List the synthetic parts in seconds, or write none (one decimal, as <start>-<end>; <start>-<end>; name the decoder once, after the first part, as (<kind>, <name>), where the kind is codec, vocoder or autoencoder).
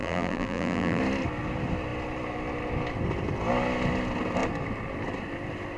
0.0-1.0 (vocoder, BigVGAN v2)